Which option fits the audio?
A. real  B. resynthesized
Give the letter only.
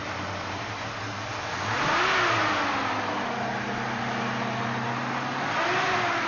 A